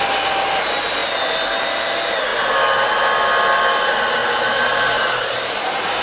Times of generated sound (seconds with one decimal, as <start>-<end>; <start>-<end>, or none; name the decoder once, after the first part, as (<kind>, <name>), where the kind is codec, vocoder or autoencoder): 4.2-6.0 (vocoder, BigVGAN v2)